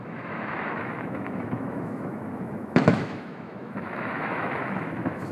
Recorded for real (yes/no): no